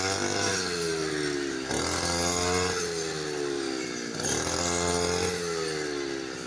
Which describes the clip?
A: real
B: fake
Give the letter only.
A